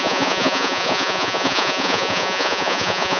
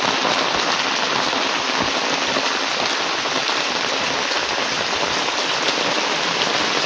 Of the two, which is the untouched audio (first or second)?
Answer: second